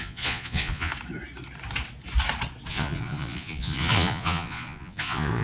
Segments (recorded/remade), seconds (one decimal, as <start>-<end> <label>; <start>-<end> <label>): 0.0-0.9 remade; 0.9-2.7 recorded; 2.7-5.4 remade